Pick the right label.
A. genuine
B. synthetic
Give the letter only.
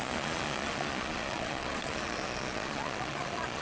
B